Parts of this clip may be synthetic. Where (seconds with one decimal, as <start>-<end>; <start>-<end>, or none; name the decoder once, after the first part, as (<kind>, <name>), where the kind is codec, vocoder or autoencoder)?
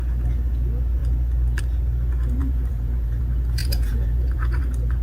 2.4-3.2 (vocoder, Vocos); 3.6-4.6